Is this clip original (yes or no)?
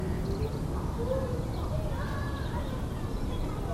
yes